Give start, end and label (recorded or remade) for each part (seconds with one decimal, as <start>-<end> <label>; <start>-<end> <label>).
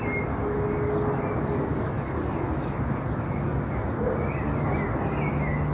0.0-5.7 recorded